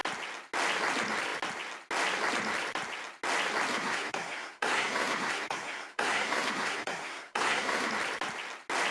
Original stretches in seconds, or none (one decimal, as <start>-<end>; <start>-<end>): 0.0-3.7; 7.9-8.9